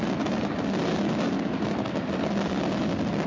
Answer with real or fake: real